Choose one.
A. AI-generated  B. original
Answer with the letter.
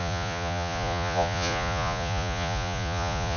A